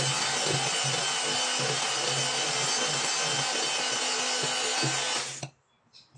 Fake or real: real